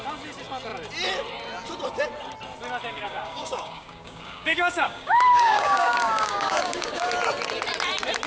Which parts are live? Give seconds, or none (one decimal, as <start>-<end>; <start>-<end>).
0.0-2.9; 7.1-8.3